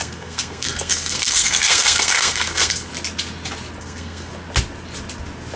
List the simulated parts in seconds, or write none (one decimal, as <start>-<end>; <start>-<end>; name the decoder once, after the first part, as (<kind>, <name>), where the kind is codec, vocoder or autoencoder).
0.0-2.9 (codec, SNAC); 3.8-4.3